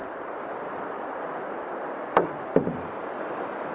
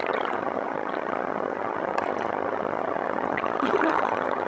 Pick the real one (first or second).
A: first